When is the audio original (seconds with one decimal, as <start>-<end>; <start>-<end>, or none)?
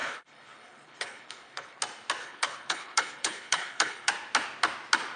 1.8-2.2; 4.1-5.2